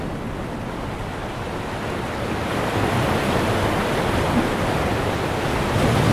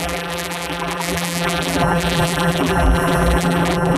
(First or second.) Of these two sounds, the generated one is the second